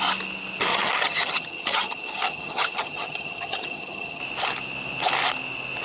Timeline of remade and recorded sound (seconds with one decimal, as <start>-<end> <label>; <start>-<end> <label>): 0.0-0.7 recorded; 0.7-4.2 remade; 4.2-5.8 recorded